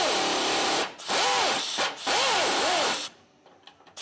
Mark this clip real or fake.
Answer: fake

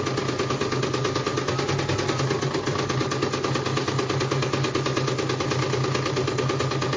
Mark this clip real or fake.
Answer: real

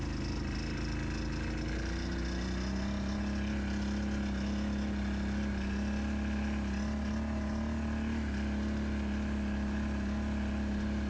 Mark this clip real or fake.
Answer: real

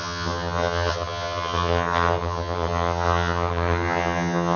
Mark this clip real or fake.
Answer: fake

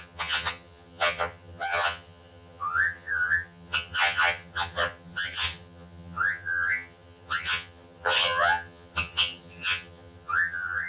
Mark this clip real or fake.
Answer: fake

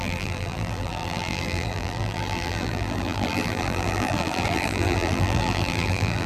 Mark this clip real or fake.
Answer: fake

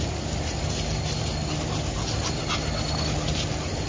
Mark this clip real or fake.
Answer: real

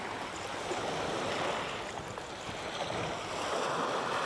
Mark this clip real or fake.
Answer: real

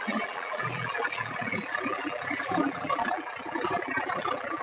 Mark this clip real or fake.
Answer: fake